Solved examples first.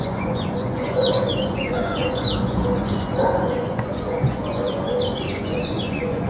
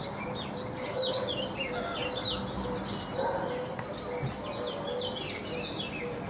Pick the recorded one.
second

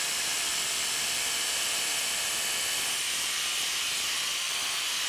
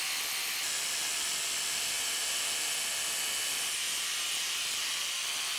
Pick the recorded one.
second